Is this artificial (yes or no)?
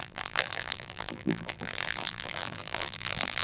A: yes